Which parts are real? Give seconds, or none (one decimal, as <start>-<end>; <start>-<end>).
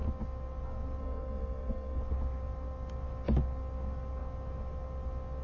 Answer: 0.0-1.0; 2.0-5.4